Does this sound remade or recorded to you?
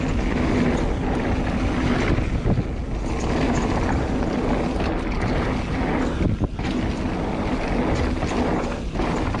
recorded